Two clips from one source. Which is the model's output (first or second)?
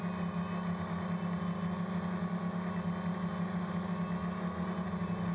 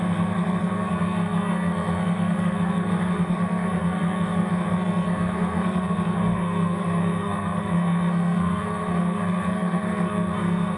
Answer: second